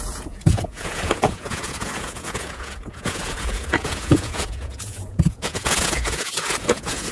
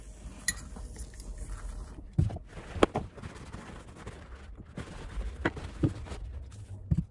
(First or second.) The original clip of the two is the second